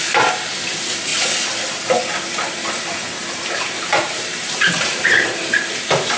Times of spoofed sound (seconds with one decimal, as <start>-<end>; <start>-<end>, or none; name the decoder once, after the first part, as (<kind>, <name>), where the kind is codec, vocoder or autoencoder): 3.2-5.4 (vocoder, BigVGAN v2)